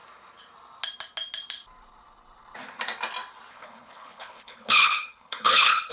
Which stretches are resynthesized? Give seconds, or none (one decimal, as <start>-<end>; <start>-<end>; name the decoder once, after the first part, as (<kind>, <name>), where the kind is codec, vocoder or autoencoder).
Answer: 3.5-5.9 (codec, HILCodec)